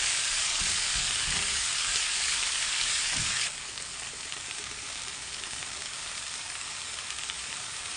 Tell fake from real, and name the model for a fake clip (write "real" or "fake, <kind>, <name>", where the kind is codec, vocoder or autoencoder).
fake, codec, DAC